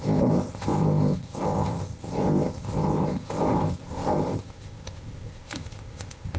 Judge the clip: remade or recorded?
remade